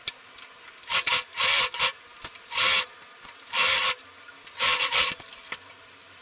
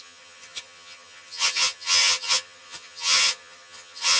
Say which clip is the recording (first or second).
first